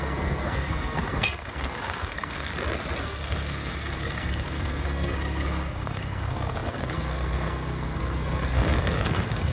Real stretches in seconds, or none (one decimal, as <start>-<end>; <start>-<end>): 2.5-3.0